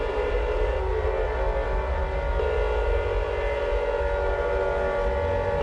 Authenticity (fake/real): real